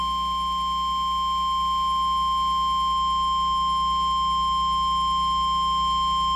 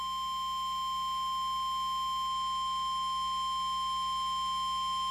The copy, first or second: first